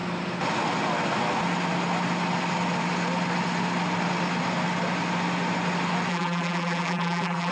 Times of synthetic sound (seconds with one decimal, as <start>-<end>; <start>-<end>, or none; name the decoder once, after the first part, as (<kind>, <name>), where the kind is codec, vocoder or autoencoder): 6.1-7.5 (vocoder, BigVGAN v2)